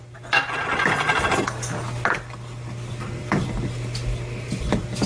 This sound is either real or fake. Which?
real